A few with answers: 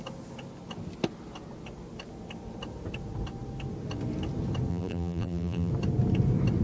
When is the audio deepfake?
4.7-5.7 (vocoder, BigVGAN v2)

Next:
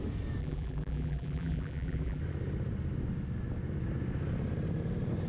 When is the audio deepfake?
0.4-2.2 (vocoder, BigVGAN v2)

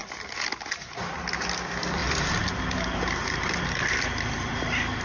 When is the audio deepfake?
1.1-2.0 (vocoder, BigVGAN v2); 2.6-5.0

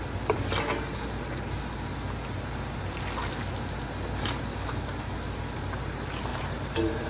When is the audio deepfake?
6.3-7.1 (vocoder, BigVGAN v2)

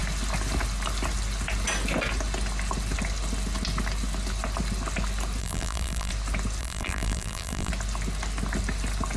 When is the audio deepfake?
5.4-6.1 (vocoder, BigVGAN v2); 6.6-7.7

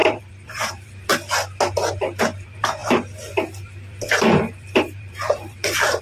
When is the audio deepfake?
0.0-1.1 (vocoder, BigVGAN v2); 2.2-6.0